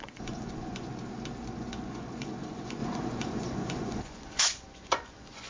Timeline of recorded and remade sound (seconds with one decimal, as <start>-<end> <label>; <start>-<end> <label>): 0.0-0.9 remade; 0.9-1.5 recorded; 1.5-5.5 remade